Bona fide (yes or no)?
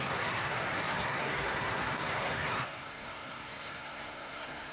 no